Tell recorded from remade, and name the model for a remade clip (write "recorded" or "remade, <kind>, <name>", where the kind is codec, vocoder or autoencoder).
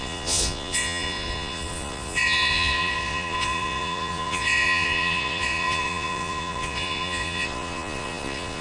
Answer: remade, vocoder, Vocos